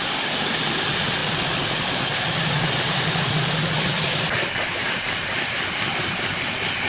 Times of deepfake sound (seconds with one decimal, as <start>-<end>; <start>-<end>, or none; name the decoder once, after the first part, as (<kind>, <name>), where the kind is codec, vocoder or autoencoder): 0.0-1.2 (vocoder, BigVGAN v2); 2.2-6.9